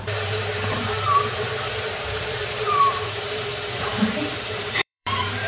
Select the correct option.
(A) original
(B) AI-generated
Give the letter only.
B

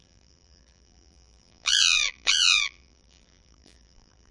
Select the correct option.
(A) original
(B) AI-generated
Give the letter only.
B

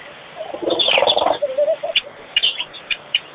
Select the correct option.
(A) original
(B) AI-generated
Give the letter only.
B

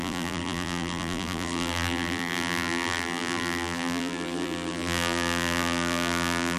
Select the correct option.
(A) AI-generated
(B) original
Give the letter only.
A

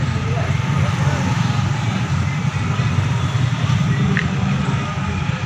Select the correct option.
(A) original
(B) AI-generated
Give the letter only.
A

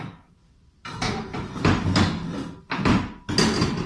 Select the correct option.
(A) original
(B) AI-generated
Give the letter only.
A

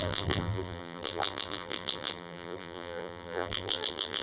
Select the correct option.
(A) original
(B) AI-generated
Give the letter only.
B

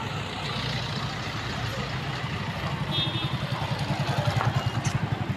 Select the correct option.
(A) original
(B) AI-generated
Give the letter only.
A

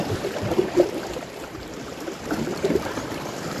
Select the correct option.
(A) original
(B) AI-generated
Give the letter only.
B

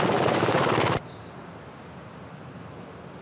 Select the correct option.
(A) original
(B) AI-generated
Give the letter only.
A